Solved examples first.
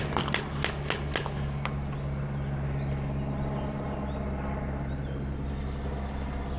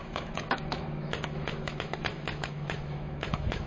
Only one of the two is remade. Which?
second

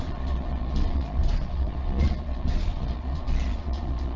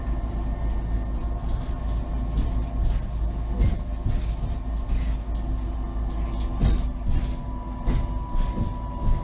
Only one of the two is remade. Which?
first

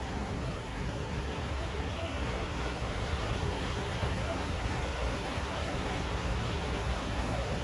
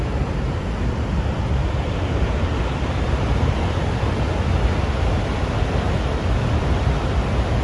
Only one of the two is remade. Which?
first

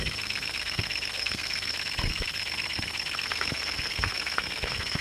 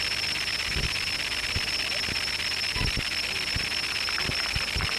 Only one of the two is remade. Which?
first